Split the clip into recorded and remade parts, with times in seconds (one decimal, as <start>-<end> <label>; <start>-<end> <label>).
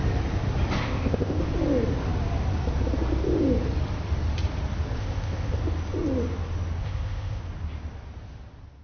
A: 0.0-0.8 recorded; 0.8-1.4 remade; 1.4-5.0 recorded; 5.0-5.6 remade; 5.6-6.8 recorded; 6.8-7.4 remade; 7.4-8.8 recorded